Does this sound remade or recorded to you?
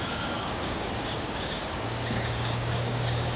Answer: remade